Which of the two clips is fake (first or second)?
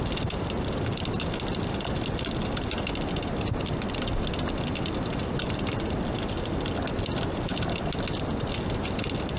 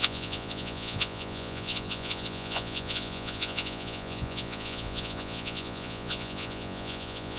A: second